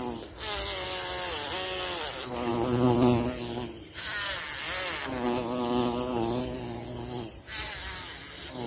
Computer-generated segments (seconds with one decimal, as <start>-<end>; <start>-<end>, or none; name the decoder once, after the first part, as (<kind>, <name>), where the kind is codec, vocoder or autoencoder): none